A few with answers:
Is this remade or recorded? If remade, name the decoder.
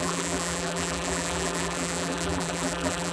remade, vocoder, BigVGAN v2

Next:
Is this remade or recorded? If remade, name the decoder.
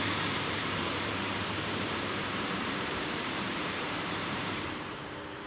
remade, vocoder, BigVGAN v2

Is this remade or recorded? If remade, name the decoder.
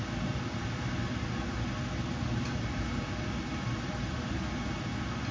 recorded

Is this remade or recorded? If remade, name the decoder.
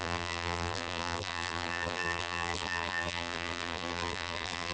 remade, vocoder, BigVGAN v2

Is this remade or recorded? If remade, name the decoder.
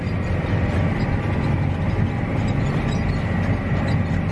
recorded